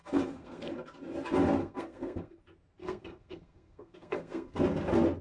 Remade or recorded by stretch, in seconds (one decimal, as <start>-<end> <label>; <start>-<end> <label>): 0.0-0.7 remade; 0.7-1.6 recorded; 1.6-2.4 remade; 2.4-2.8 recorded; 2.8-4.6 remade; 4.6-5.2 recorded